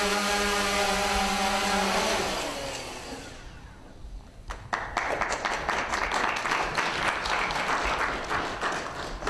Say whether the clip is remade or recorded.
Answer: recorded